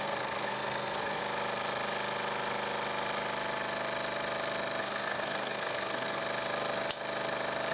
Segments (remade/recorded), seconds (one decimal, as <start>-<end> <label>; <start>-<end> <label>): 0.0-1.2 remade; 1.2-4.8 recorded; 4.8-6.2 remade; 6.2-7.7 recorded